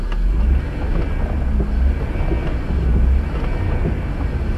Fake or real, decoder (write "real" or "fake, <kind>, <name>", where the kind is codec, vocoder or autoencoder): real